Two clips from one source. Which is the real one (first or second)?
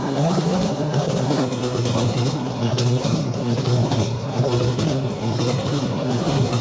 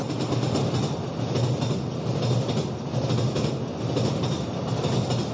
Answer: second